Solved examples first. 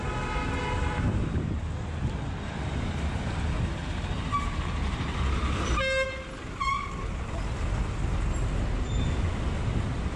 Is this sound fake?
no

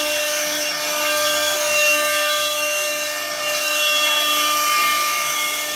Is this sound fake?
yes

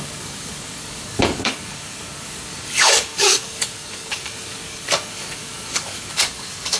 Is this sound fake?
yes